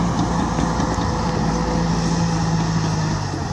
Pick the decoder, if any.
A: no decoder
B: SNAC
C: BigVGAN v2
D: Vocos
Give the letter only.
A